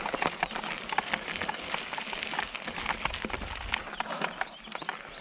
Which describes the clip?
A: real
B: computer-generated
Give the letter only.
A